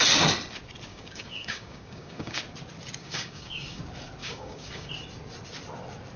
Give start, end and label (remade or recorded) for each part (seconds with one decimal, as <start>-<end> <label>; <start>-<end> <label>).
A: 0.0-0.9 recorded; 0.9-2.4 remade; 2.4-3.0 recorded; 3.0-3.8 remade; 3.8-4.2 recorded; 4.2-4.9 remade; 4.9-6.2 recorded